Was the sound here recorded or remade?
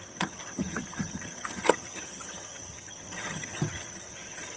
remade